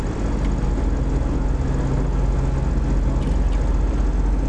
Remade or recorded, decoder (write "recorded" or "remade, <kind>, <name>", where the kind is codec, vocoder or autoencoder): recorded